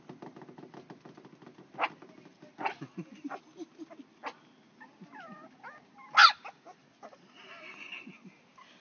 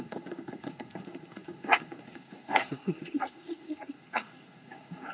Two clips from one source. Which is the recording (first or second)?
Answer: first